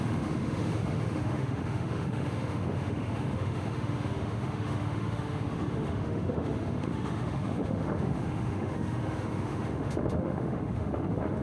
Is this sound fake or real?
fake